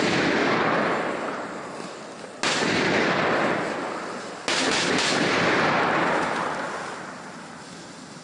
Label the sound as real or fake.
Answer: real